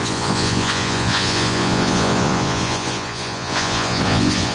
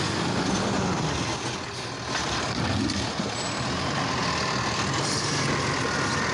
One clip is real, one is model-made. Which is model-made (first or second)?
first